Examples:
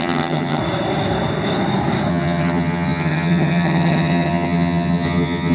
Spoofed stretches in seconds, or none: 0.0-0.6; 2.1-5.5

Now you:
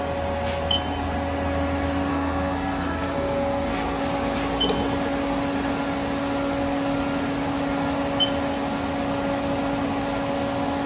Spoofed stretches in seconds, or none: 2.1-4.0

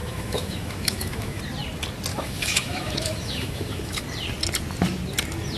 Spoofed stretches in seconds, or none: 0.0-1.4; 2.1-4.0

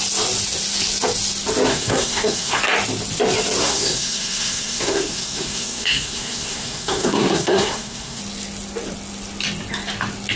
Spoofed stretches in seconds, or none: 1.7-2.6; 3.6-8.2

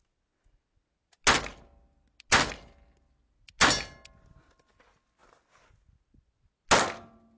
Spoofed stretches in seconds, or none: none

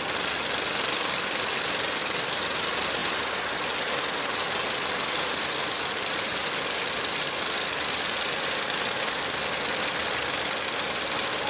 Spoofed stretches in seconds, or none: none